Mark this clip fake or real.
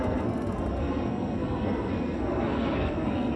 fake